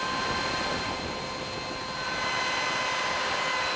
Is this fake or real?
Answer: real